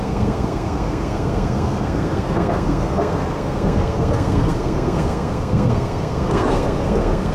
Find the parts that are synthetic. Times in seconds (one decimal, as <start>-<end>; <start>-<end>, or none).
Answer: 0.0-7.3